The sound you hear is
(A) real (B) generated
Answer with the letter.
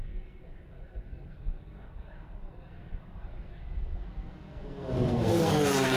B